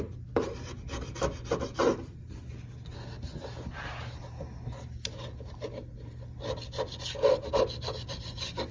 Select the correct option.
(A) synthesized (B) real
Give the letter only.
B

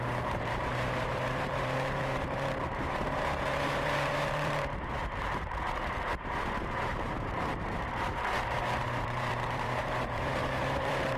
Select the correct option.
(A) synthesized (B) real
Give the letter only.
A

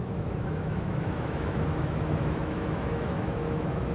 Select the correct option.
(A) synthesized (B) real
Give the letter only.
A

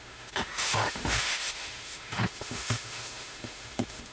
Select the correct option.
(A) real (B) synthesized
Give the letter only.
B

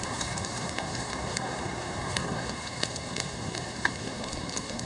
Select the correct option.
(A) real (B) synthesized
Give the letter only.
B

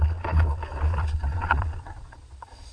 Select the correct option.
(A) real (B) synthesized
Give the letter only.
B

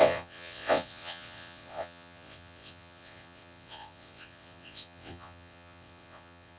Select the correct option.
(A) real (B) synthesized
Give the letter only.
B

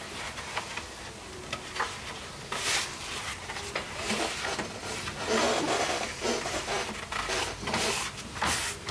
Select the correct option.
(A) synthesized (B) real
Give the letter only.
B